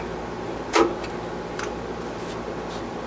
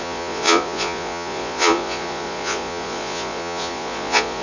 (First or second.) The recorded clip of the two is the first